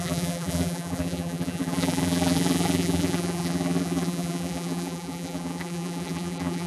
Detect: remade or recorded remade